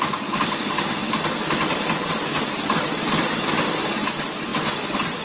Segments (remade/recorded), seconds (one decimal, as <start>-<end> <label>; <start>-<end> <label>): 0.0-5.2 recorded